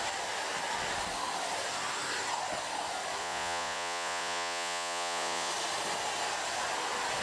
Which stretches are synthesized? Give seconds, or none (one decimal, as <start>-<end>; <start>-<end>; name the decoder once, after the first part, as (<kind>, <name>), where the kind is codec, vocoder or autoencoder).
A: 3.2-5.5 (vocoder, Vocos)